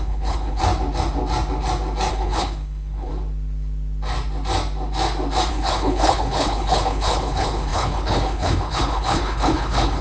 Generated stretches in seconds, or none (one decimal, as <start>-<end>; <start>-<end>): 0.0-0.6; 2.1-3.1; 5.5-10.0